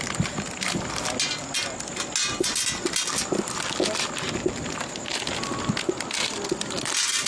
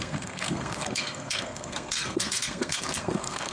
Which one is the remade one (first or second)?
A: second